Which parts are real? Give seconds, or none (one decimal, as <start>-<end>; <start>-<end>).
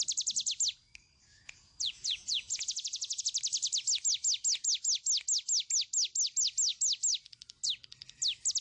0.0-1.3; 3.2-8.6